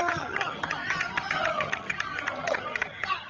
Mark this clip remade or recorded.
remade